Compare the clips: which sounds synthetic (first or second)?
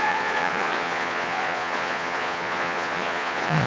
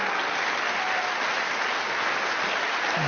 first